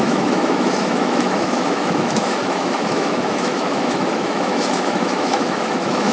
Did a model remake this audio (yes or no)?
yes